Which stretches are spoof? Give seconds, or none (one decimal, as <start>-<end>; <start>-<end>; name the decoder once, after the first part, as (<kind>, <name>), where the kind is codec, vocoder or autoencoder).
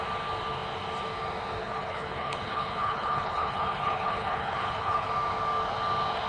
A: 1.6-5.1 (codec, HILCodec)